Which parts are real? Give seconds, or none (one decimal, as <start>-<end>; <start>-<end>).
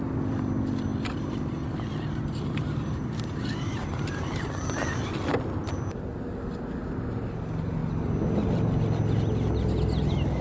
0.0-0.9; 4.5-10.4